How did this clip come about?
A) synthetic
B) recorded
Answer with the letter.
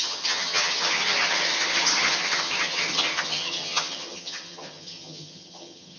A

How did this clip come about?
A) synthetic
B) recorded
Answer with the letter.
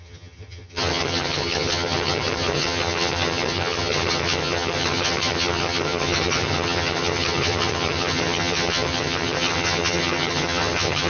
A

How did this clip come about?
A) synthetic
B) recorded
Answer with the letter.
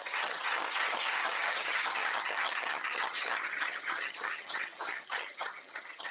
A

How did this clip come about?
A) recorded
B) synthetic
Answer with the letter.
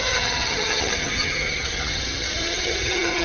B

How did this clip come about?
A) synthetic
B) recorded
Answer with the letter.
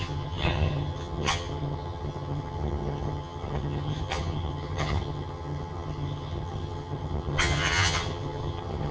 A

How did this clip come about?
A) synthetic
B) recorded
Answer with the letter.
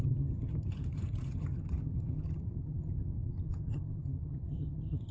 A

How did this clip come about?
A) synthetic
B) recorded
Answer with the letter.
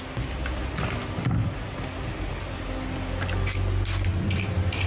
B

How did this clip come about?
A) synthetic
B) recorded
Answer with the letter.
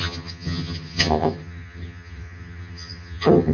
A